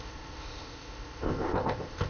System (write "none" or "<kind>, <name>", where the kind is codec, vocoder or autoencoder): codec, ZipCodec